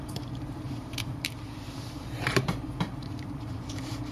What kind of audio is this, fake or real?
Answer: fake